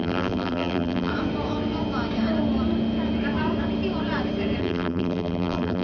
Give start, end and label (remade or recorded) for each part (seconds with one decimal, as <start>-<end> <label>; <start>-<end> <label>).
0.0-1.1 remade; 1.1-4.6 recorded; 4.6-5.8 remade